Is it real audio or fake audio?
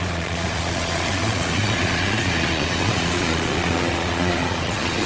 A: fake